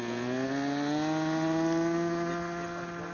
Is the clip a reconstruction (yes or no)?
no